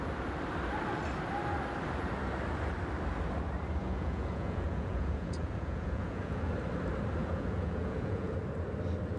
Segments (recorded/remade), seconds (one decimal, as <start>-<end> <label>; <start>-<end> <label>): 0.0-3.8 recorded; 3.8-6.5 remade; 6.5-7.2 recorded; 7.2-8.3 remade; 8.3-9.2 recorded

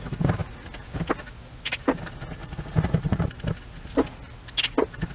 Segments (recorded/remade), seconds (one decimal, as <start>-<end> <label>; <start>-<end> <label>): 0.0-2.4 recorded; 2.4-3.3 remade; 3.3-5.1 recorded

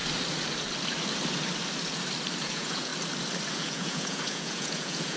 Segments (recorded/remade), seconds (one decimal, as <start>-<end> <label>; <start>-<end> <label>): 0.0-2.4 recorded; 2.4-2.9 remade; 2.9-3.5 recorded; 3.5-5.2 remade

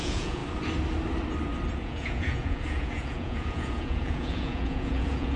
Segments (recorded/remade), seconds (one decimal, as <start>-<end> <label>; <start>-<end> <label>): 0.0-0.4 remade; 0.4-1.7 recorded; 1.7-5.4 remade

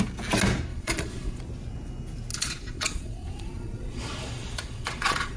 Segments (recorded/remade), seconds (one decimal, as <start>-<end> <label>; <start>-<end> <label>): 0.0-0.7 recorded; 0.7-1.4 remade; 1.4-2.3 recorded; 2.3-5.4 remade

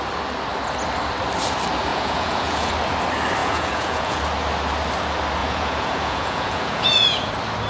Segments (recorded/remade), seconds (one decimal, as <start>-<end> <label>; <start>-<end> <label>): 0.0-1.9 recorded; 1.9-2.7 remade; 2.7-3.4 recorded; 3.4-4.2 remade; 4.2-5.4 recorded; 5.4-7.3 remade; 7.3-7.7 recorded